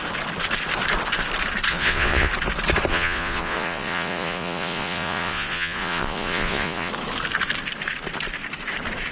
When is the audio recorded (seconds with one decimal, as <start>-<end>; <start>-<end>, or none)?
0.0-1.7; 2.3-2.9; 6.9-9.1